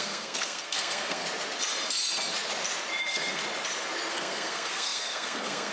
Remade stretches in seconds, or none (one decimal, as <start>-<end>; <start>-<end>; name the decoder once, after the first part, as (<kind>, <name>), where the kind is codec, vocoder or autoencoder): 0.0-1.2 (codec, SNAC); 3.0-3.4; 4.1-5.7